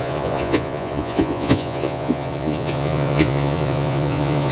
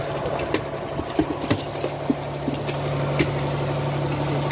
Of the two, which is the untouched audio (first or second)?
second